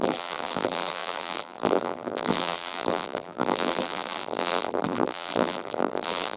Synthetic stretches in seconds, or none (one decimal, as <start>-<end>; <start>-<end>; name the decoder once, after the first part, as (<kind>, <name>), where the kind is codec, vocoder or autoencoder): 0.0-6.4 (vocoder, BigVGAN v2)